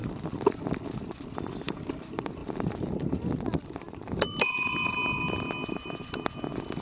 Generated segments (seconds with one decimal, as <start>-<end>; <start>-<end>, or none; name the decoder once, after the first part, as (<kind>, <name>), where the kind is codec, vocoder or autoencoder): none